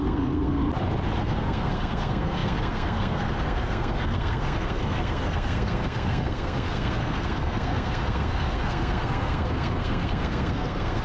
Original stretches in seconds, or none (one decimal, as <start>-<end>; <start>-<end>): 0.6-1.2

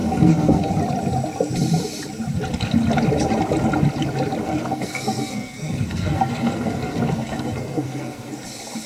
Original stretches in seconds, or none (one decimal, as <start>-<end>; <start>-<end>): 0.7-4.4; 8.3-8.9

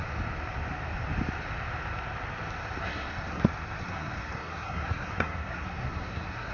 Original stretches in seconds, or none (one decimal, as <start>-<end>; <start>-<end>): 0.0-2.8; 3.4-3.8

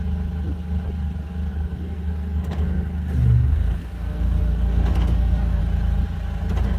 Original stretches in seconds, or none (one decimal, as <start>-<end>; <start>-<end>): 0.0-1.5; 5.6-6.8